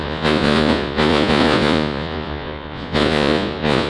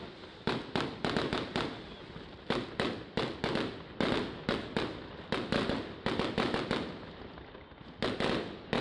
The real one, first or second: second